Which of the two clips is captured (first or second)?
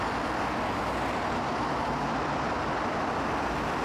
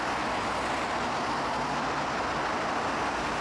second